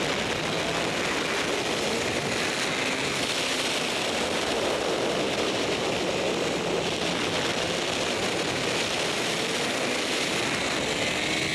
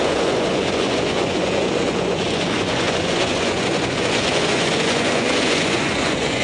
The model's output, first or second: second